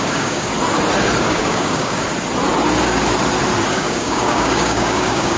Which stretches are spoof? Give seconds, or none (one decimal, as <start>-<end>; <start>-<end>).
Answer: 0.0-0.5; 1.2-2.0; 3.7-5.4